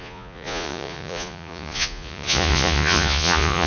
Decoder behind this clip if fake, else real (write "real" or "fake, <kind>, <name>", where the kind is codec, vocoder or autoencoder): fake, vocoder, Vocos